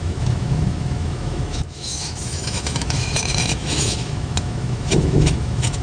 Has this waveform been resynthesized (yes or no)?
yes